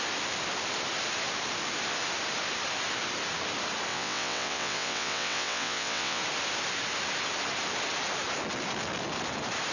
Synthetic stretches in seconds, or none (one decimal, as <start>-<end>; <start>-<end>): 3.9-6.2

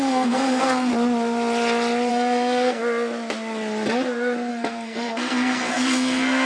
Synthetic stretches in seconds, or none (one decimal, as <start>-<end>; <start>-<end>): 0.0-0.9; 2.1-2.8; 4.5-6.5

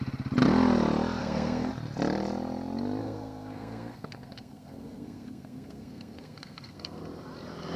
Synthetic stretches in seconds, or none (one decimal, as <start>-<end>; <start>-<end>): 1.2-1.7; 3.0-7.0

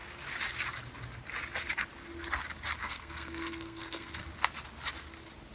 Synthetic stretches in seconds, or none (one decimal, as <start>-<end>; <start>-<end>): 2.8-4.2